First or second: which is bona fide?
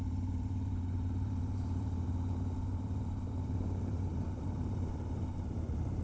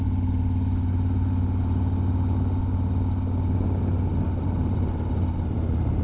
second